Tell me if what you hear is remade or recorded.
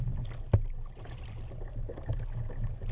recorded